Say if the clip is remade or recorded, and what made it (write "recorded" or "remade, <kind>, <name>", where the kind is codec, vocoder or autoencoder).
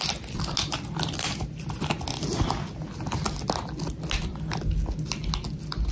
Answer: recorded